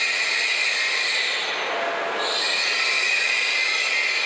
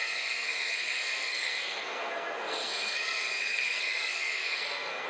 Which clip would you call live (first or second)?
first